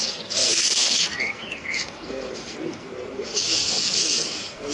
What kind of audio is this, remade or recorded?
remade